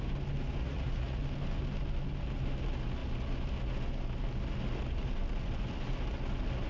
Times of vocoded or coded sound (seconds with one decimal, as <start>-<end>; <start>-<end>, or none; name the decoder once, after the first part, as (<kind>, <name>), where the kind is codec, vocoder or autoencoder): 0.6-1.2 (vocoder, Vocos)